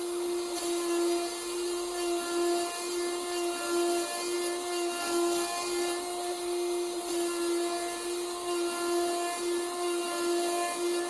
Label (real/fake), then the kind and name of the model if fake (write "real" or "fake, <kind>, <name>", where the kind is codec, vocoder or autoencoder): real